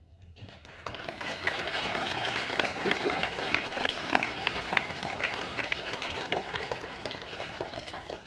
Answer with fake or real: fake